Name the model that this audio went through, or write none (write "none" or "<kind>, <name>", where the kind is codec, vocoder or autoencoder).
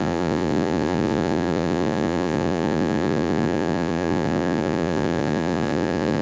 vocoder, Vocos